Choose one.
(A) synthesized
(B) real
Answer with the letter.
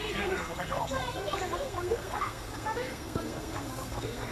A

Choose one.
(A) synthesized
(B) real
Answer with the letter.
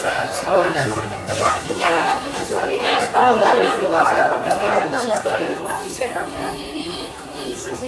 A